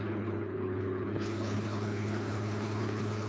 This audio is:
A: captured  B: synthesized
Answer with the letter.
B